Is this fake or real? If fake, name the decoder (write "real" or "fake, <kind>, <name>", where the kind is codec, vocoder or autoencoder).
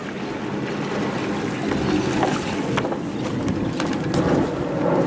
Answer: real